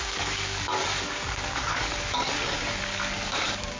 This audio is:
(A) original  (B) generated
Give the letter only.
B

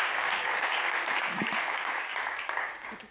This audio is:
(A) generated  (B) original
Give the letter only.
A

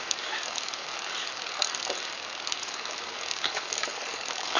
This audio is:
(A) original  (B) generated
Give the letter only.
B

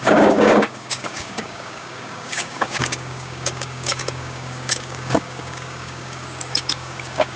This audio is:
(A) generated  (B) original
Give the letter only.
A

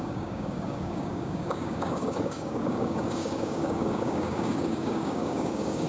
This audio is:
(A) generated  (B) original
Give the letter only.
A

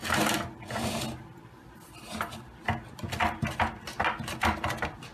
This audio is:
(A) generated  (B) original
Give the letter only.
B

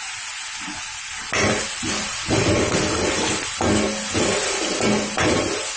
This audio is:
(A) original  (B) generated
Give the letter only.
A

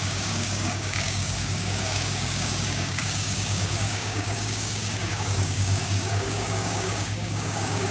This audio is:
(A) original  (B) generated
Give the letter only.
B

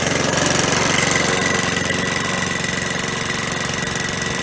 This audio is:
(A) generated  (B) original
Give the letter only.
B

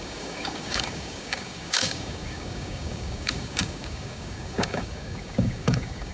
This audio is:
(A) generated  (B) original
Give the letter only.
A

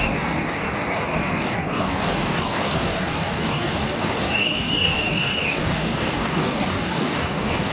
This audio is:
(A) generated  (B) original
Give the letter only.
A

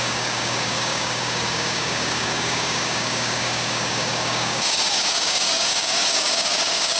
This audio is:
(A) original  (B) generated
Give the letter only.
B